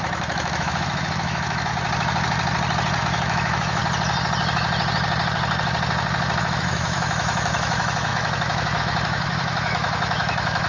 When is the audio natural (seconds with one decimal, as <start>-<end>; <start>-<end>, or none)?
1.7-3.0; 3.8-6.4